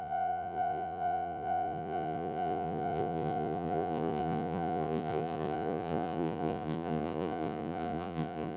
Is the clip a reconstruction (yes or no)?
yes